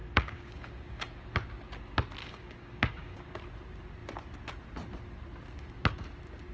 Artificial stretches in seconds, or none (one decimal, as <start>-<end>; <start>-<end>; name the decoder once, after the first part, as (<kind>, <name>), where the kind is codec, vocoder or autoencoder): 0.0-1.2 (codec, DAC); 2.2-3.4